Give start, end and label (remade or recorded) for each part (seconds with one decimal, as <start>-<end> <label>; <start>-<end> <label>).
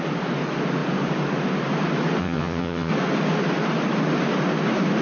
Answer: 0.0-2.2 recorded; 2.2-2.9 remade; 2.9-5.0 recorded